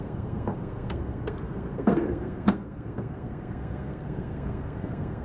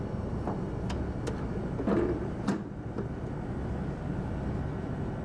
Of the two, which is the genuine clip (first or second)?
second